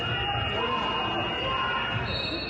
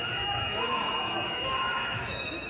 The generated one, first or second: second